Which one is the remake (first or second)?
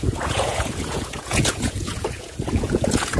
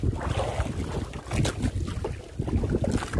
first